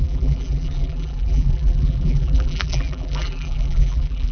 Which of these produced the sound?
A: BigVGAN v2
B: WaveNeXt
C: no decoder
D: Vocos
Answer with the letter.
A